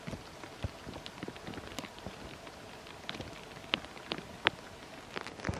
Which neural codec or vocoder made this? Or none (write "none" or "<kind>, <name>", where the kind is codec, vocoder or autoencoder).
none